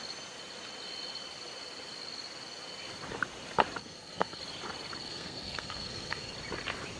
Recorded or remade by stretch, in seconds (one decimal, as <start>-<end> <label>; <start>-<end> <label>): 0.0-3.8 recorded; 3.8-4.4 remade; 4.4-5.0 recorded; 5.0-6.3 remade; 6.3-7.0 recorded